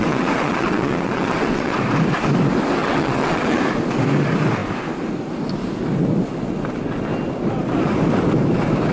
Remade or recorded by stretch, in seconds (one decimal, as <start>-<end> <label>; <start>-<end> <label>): 0.0-1.8 remade; 1.8-2.8 recorded; 2.8-3.6 remade; 3.6-8.9 recorded